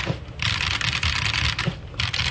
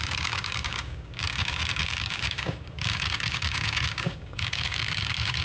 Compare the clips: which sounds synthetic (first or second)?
second